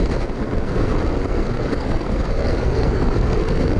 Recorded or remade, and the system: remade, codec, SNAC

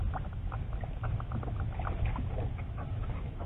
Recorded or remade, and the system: recorded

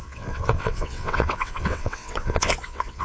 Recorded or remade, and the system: remade, vocoder, WaveNeXt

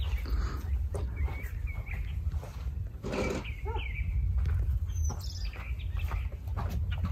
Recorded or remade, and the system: recorded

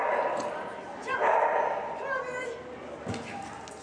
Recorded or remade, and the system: recorded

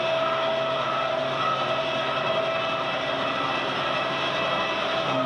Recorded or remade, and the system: recorded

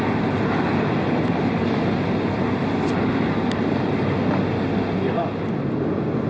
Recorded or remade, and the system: recorded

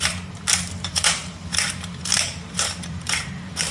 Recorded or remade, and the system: remade, vocoder, BigVGAN v2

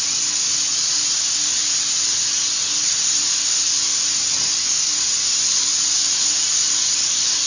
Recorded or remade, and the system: recorded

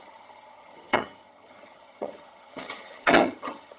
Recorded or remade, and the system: remade, vocoder, HiFi-GAN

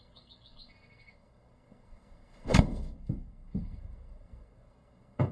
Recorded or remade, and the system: remade, codec, SNAC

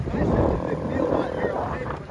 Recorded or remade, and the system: remade, vocoder, BigVGAN v2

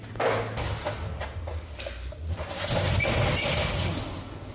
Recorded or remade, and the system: recorded